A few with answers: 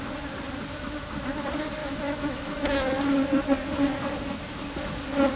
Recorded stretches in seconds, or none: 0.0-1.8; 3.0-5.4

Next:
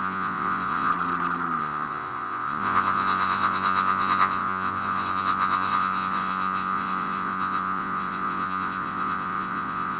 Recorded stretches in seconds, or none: 0.9-1.6

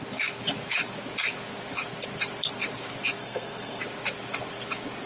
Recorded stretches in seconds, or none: 0.0-3.2; 3.8-5.1

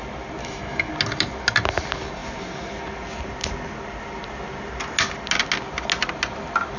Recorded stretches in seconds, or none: 0.0-0.4; 0.9-6.8

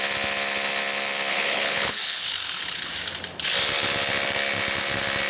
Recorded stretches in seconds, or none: 0.0-1.3; 2.9-5.3